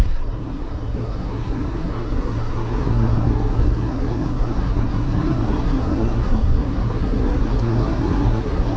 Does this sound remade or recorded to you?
remade